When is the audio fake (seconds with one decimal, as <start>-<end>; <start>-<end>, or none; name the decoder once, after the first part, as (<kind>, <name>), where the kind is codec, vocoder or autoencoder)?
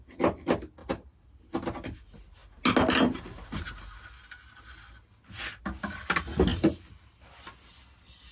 0.8-1.4 (vocoder, BigVGAN v2); 6.5-7.2